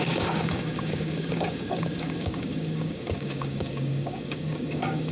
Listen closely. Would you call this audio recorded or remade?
remade